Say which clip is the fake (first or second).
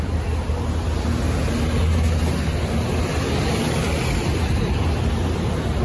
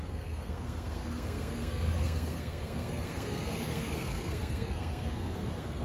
second